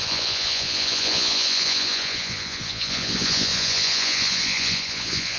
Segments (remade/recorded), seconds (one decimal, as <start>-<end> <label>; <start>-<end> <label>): 0.0-5.4 remade